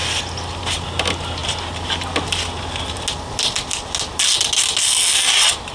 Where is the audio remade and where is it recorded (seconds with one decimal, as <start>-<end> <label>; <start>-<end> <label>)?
0.0-5.7 recorded